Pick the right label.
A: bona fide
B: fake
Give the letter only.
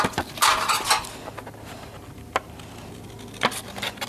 A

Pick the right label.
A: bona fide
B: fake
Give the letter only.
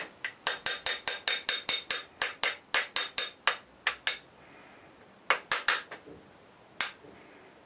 A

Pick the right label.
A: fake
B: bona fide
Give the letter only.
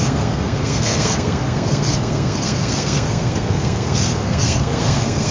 A